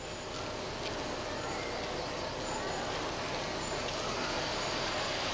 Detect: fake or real real